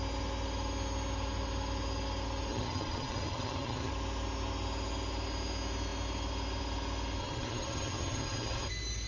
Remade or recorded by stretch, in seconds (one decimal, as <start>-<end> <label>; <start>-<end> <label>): 0.0-2.5 recorded; 2.5-3.9 remade; 3.9-7.2 recorded; 7.2-8.7 remade; 8.7-9.1 recorded